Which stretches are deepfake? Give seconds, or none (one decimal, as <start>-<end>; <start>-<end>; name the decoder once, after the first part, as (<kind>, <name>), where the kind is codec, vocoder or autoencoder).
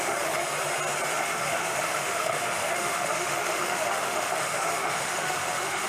0.0-0.4 (autoencoder, DAC-VAE); 1.1-5.9